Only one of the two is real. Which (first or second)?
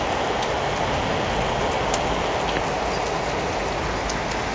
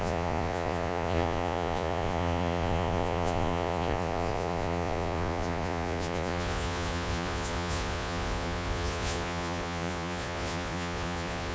first